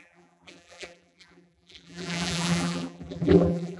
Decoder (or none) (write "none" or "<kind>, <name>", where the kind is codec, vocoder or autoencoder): vocoder, BigVGAN v2